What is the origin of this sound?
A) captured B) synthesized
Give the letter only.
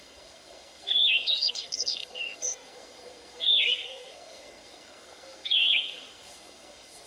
B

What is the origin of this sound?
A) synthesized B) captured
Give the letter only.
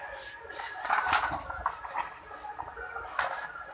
B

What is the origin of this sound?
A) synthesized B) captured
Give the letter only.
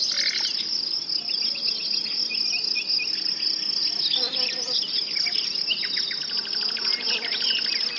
B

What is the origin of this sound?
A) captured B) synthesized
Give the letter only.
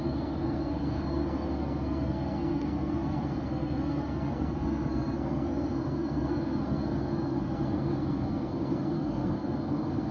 B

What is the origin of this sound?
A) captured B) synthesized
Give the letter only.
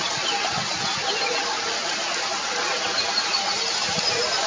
A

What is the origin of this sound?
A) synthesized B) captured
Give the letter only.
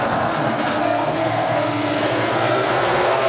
A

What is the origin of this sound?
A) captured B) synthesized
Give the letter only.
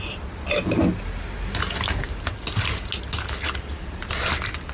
A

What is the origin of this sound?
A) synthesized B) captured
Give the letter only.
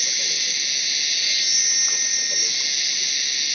B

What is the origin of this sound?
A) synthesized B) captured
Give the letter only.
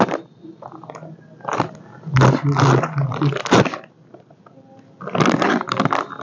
B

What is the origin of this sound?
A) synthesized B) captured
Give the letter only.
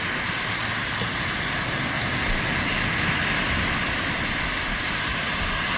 B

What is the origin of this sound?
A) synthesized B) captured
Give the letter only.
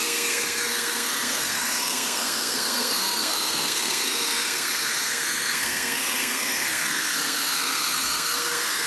A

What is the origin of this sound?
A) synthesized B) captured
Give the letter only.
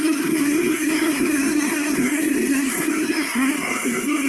A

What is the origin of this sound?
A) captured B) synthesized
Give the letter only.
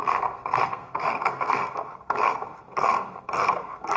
B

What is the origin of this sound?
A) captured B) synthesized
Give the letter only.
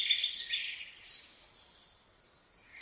A